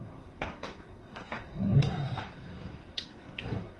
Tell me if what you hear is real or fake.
fake